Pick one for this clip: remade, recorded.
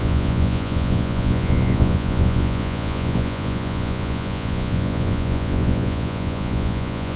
remade